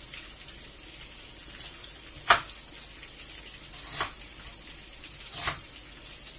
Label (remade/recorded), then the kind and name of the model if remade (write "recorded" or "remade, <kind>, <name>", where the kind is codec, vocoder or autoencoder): recorded